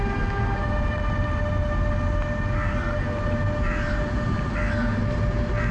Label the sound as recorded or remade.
recorded